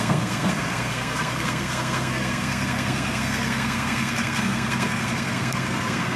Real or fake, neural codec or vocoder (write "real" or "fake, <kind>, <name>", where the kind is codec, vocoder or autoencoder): fake, codec, SNAC